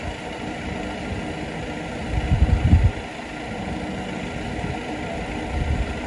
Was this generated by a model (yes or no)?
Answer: no